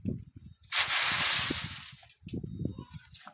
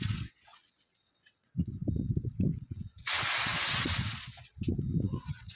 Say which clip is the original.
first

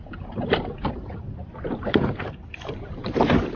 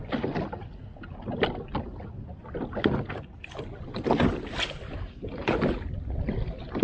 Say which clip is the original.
second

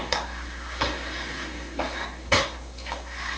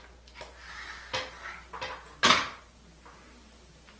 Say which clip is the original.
second